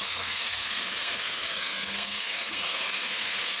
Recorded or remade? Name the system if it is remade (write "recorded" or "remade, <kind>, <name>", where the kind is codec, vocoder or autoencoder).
remade, codec, SNAC